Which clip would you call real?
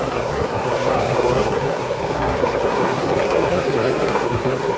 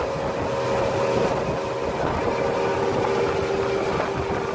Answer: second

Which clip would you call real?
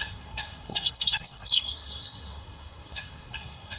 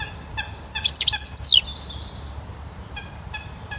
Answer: second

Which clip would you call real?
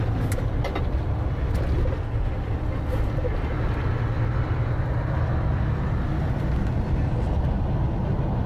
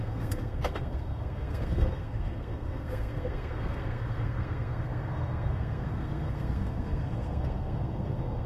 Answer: first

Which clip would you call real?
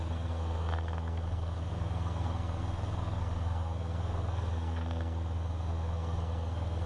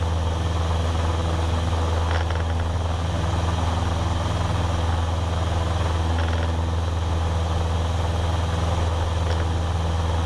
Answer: second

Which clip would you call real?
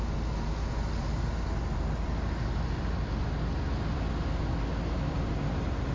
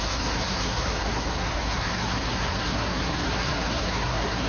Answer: first